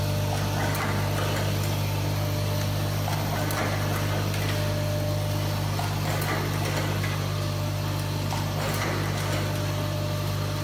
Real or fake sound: real